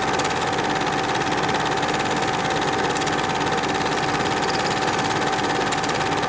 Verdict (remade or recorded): recorded